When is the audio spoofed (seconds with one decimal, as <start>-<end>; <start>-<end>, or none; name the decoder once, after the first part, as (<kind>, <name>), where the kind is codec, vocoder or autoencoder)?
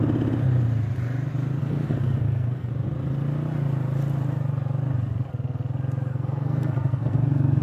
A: 1.6-2.7 (codec, SNAC); 6.1-7.6